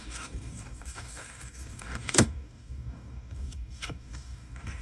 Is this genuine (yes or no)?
no